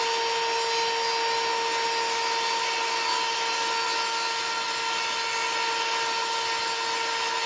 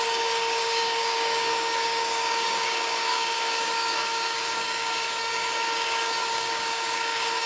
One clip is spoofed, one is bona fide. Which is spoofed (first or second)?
second